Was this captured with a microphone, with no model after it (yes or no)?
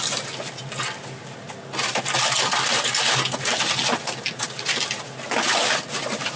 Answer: yes